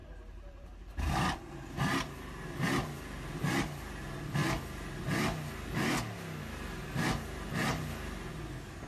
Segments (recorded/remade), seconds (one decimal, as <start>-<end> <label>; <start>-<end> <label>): 0.0-1.4 remade; 1.4-8.9 recorded